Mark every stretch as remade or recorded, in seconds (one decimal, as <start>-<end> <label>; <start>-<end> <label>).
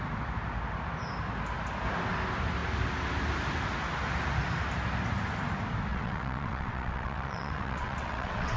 0.0-5.9 recorded; 5.9-8.6 remade